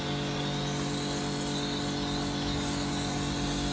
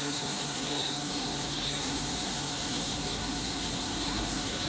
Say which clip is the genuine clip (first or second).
first